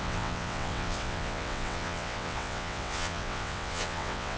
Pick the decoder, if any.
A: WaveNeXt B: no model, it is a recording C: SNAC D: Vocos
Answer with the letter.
A